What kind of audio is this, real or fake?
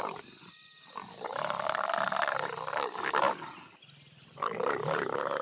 real